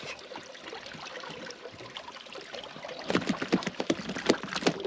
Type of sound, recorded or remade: recorded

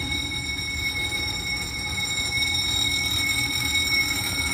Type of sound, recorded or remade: remade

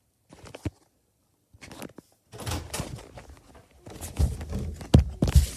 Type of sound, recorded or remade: recorded